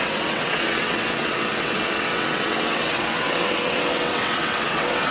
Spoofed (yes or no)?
yes